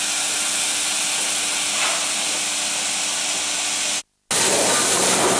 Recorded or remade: recorded